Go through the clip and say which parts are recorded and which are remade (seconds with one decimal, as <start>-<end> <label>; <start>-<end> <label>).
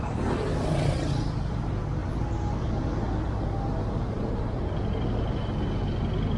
0.0-0.5 recorded; 0.5-1.1 remade; 1.1-6.4 recorded